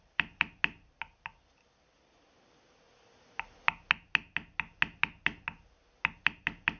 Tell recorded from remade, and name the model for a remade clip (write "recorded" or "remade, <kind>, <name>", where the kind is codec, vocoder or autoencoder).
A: recorded